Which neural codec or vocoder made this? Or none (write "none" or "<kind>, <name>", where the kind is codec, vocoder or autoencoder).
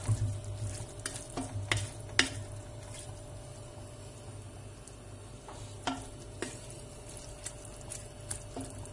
none